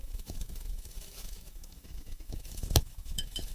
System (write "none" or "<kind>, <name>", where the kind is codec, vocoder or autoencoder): autoencoder, DAC-VAE